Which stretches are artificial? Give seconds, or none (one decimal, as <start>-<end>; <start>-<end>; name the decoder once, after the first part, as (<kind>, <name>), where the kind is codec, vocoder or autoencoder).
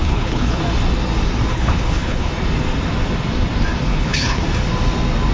0.0-0.6 (codec, HILCodec); 1.5-2.3; 3.9-4.4